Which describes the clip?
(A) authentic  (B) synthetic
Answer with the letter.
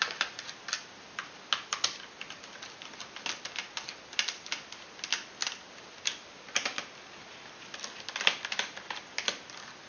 A